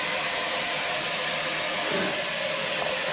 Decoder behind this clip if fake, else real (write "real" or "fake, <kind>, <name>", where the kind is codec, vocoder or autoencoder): real